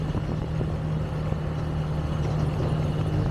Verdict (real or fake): real